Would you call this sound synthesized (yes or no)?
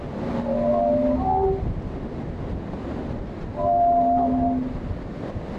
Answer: no